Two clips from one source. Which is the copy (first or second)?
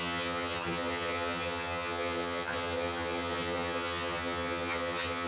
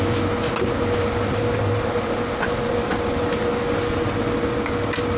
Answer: first